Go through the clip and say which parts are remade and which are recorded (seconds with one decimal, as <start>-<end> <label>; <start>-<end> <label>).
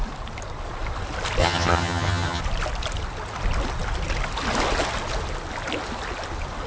0.0-1.4 recorded; 1.4-2.4 remade; 2.4-6.7 recorded